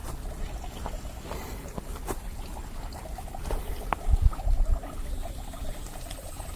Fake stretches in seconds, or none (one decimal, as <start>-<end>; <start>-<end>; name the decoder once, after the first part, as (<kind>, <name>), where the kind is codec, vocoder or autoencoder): none